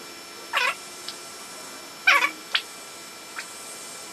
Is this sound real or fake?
real